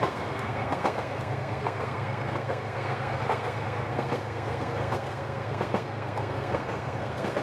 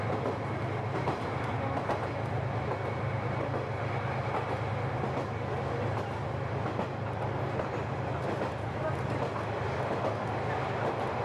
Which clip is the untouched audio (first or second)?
second